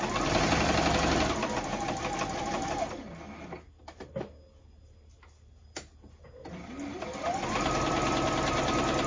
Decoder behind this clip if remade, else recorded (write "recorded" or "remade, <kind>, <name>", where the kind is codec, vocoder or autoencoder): recorded